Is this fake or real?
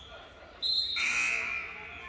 real